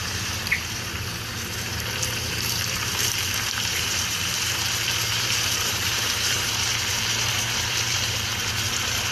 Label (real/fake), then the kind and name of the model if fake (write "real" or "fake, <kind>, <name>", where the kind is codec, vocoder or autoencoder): fake, vocoder, BigVGAN v2